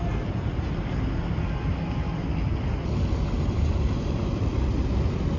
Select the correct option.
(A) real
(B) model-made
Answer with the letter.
A